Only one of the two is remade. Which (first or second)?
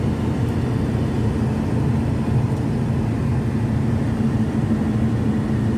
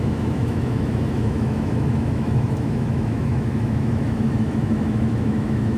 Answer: second